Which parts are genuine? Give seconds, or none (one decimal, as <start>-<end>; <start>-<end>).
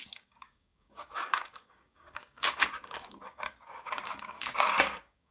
none